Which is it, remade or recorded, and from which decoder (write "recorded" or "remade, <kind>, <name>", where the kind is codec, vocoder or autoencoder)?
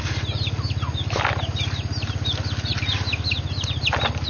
recorded